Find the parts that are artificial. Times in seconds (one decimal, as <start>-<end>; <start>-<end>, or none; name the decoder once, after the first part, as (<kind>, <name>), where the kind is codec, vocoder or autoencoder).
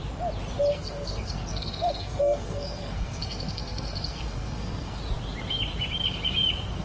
0.7-5.0 (codec, SNAC)